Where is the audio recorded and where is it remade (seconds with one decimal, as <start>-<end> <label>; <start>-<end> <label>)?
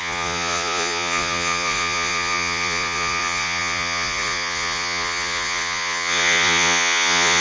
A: 0.0-7.4 remade